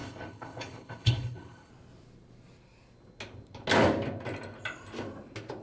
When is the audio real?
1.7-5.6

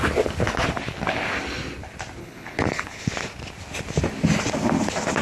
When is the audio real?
0.0-2.2; 3.1-5.2

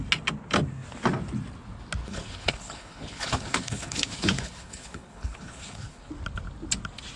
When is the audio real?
0.0-2.0; 6.1-7.2

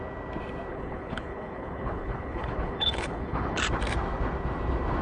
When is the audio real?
0.0-0.7; 3.6-5.0

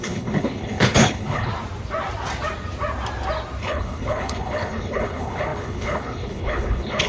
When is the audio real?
1.5-3.6

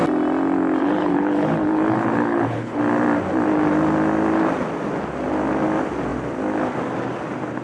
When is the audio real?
0.0-0.8; 2.8-7.6